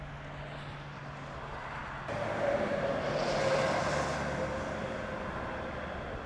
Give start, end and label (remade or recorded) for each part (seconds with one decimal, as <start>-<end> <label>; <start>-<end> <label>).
0.0-6.3 recorded